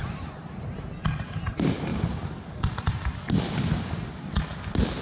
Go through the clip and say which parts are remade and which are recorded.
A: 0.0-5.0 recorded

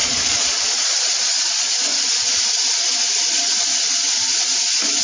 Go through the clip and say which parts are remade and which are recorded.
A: 0.0-1.9 remade; 1.9-3.3 recorded; 3.3-3.7 remade; 3.7-5.0 recorded

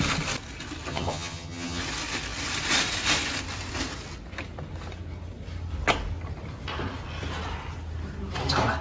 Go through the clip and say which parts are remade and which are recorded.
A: 0.0-0.9 recorded; 0.9-1.8 remade; 1.8-8.8 recorded

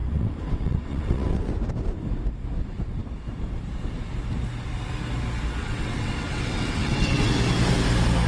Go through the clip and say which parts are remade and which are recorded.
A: 0.0-1.5 remade; 1.5-5.6 recorded; 5.6-7.3 remade; 7.3-8.3 recorded